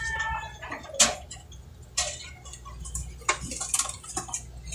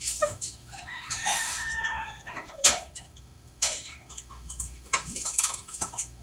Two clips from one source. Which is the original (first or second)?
first